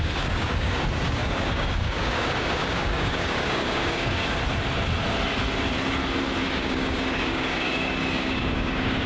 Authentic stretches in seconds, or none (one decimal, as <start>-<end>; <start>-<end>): 4.2-6.4